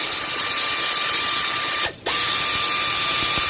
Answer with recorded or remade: recorded